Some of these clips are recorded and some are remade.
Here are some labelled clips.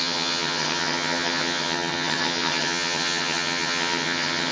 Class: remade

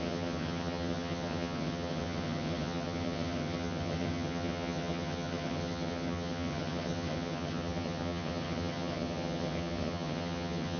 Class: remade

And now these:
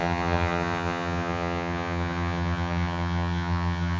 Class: remade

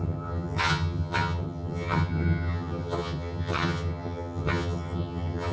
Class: remade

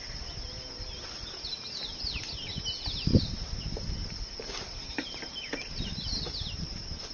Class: recorded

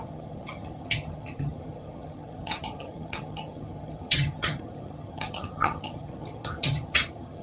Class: remade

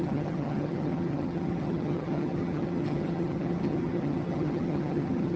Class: remade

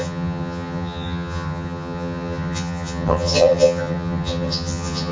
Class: remade